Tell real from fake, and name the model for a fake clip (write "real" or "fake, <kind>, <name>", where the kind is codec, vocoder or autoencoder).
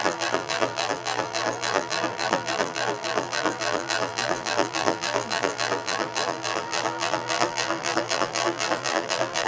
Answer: fake, vocoder, BigVGAN v2